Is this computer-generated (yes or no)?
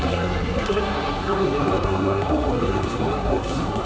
yes